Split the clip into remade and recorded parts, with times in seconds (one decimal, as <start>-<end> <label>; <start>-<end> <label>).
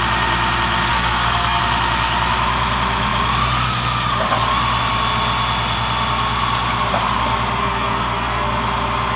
0.0-0.9 recorded; 0.9-1.6 remade; 1.6-7.6 recorded; 7.6-8.5 remade; 8.5-9.2 recorded